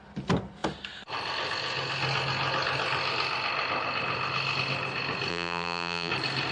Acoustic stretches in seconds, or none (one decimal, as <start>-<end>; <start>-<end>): 0.0-5.3; 6.1-6.5

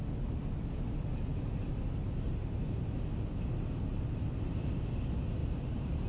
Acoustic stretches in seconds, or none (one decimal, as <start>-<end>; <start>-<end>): 0.0-5.4

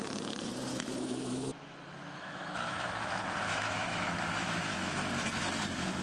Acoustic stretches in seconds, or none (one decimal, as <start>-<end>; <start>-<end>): 0.0-0.7; 3.1-3.5; 5.1-6.0